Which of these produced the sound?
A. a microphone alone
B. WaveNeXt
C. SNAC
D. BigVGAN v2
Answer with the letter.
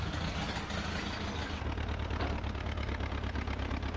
A